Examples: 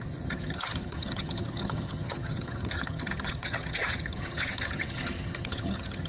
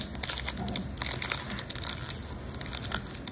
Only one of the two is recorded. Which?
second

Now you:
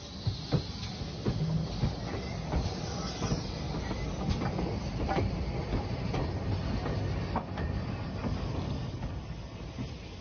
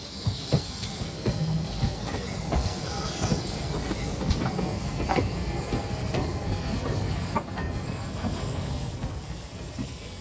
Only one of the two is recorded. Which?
first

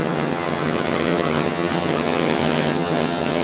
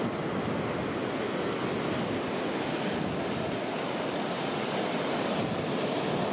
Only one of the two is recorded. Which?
second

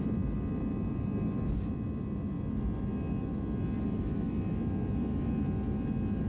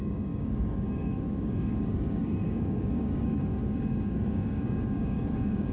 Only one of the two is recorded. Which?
first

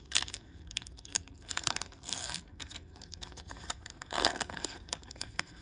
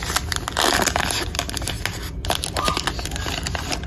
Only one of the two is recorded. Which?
second